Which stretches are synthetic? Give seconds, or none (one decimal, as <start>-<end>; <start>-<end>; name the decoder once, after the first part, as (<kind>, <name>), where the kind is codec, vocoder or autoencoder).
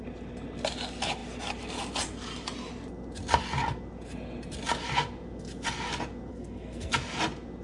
6.3-6.9 (codec, SNAC)